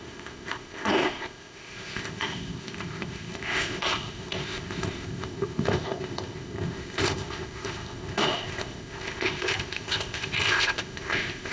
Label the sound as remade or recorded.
remade